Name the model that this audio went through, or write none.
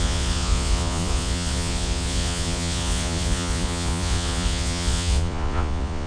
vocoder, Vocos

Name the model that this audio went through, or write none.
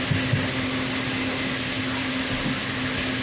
none